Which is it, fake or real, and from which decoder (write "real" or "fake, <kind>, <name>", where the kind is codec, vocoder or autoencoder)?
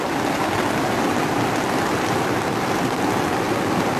real